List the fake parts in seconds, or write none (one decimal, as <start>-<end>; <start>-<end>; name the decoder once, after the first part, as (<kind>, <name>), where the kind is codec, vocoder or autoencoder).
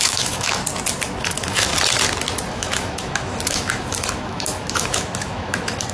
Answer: 0.0-0.6 (autoencoder, DAC-VAE); 1.2-1.7; 2.5-5.9